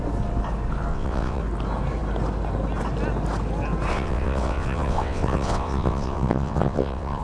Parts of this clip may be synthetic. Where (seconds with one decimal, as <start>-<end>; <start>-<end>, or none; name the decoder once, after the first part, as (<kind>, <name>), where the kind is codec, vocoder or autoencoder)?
0.9-1.4 (vocoder, WaveNeXt); 3.9-7.2